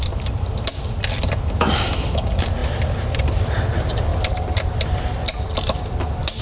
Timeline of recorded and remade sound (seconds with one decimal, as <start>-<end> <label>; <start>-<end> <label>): 0.0-6.4 recorded